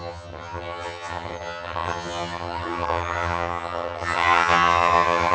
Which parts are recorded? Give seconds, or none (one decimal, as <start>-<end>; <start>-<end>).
none